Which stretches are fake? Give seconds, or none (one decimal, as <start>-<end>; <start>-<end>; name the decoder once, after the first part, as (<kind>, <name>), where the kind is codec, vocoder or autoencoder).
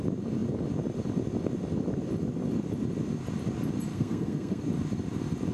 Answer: 3.9-4.6 (codec, SNAC)